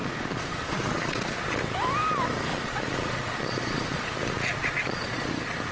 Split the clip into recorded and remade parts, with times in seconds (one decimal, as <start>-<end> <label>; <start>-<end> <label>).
0.0-1.6 remade; 1.6-2.5 recorded; 2.5-5.3 remade; 5.3-5.7 recorded